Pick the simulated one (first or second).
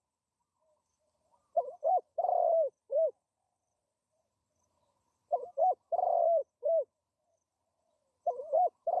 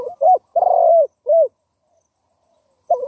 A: first